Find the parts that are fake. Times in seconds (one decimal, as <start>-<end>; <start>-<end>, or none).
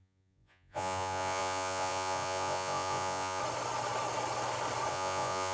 0.0-3.4; 4.9-5.5